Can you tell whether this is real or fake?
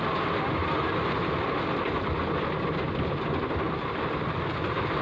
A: real